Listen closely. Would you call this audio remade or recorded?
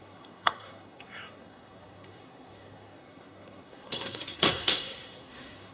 remade